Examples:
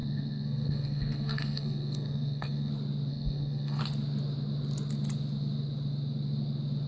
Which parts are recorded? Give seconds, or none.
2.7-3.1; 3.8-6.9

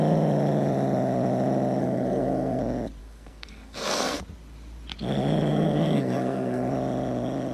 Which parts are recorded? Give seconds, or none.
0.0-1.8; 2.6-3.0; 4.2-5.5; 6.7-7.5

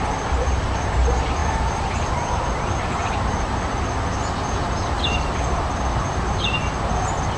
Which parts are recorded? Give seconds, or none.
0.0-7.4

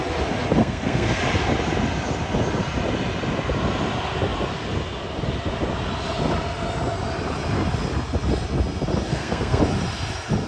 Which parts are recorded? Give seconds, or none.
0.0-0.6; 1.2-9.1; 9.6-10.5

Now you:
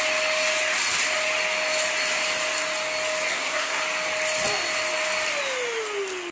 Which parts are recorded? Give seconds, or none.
0.0-3.3; 3.8-6.3

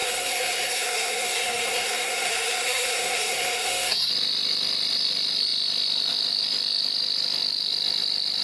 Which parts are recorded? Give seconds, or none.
4.1-8.4

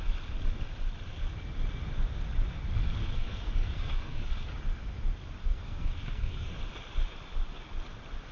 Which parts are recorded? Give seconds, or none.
0.0-3.0; 4.3-5.4; 6.6-8.3

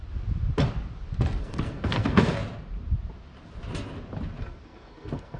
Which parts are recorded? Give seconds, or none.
0.0-1.4; 2.4-4.4